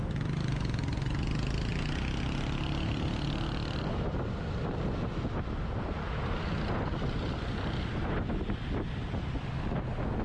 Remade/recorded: recorded